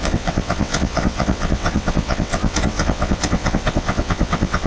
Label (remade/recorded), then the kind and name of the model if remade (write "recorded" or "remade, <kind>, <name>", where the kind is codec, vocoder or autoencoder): remade, vocoder, WaveNeXt